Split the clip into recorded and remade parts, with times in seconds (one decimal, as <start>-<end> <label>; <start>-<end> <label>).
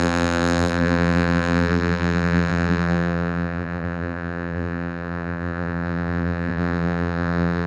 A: 0.0-7.7 remade